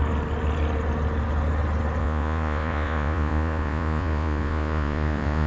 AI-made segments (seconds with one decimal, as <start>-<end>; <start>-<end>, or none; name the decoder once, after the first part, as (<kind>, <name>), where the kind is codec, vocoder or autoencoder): 2.0-5.5 (vocoder, Vocos)